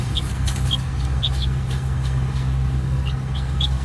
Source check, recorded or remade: remade